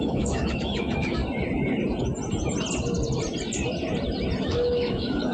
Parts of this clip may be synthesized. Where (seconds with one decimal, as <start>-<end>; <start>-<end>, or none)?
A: 0.0-1.2; 4.4-5.3